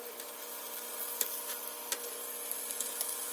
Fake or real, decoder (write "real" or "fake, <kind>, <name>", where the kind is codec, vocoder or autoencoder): real